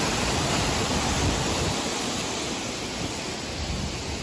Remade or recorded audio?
recorded